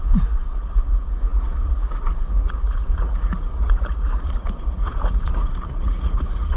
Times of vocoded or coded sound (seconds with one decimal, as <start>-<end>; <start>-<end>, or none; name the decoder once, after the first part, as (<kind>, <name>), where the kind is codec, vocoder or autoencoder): 0.0-6.6 (vocoder, Vocos)